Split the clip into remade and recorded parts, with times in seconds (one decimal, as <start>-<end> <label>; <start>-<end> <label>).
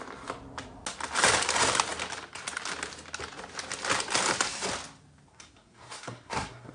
0.0-5.3 recorded; 5.3-6.7 remade